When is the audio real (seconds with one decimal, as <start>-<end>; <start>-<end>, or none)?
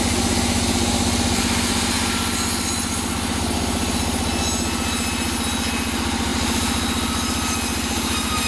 0.0-6.3